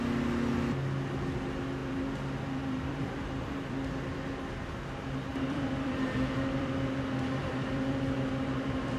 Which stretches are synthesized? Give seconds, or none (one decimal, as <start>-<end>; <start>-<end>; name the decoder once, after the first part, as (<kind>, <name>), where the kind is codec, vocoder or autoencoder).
1.8-4.7 (vocoder, BigVGAN v2); 5.3-9.0